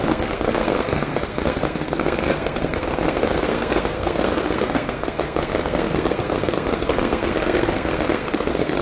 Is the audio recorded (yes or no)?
no